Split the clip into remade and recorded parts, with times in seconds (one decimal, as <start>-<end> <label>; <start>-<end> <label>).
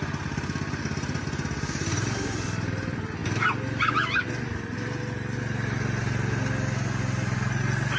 0.0-8.0 recorded